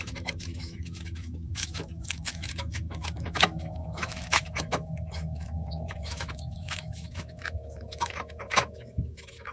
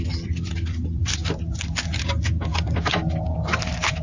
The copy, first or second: first